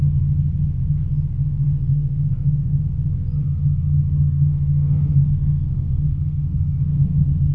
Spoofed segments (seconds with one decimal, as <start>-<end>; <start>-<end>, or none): 1.9-2.8; 3.4-7.5